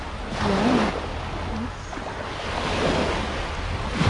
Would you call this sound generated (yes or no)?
no